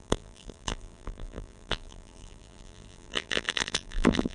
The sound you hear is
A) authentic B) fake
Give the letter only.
B